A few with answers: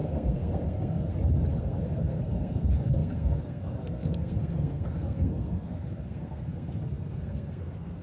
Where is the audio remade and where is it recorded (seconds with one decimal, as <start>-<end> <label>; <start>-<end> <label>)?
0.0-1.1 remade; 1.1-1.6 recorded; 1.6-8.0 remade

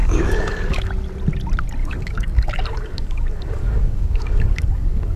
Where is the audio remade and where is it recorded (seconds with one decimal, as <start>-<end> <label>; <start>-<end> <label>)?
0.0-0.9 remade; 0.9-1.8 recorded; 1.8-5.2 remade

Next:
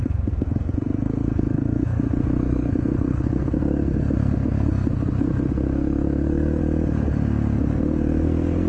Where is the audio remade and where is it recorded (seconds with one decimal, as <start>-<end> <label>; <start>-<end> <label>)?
0.0-6.6 remade; 6.6-7.6 recorded; 7.6-8.7 remade

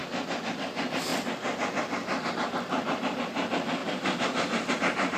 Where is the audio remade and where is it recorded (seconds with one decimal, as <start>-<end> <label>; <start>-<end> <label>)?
0.0-0.5 recorded; 0.5-1.1 remade; 1.1-2.3 recorded; 2.3-3.8 remade; 3.8-4.7 recorded; 4.7-5.2 remade

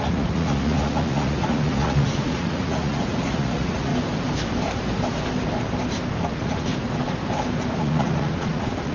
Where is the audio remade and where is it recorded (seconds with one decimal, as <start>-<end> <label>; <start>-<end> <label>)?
0.0-3.9 remade; 3.9-6.2 recorded; 6.2-6.7 remade; 6.7-7.8 recorded; 7.8-8.9 remade

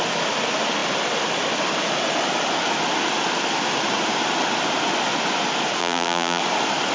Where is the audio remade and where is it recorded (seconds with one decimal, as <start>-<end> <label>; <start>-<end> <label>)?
0.0-5.8 recorded; 5.8-6.4 remade; 6.4-6.9 recorded